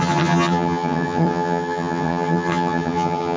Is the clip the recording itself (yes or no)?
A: no